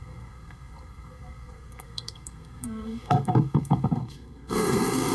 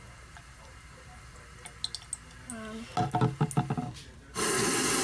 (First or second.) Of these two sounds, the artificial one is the first